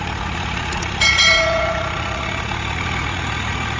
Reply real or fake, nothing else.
fake